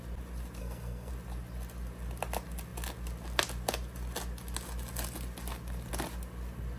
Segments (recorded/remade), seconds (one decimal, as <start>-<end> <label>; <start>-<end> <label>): 0.0-0.6 recorded; 0.6-1.1 remade; 1.1-6.8 recorded